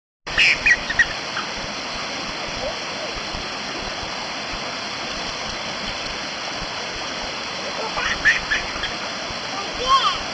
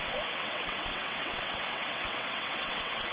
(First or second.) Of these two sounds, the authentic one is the first